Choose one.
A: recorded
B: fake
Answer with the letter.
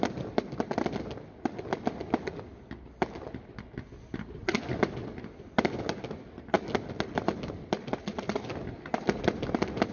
A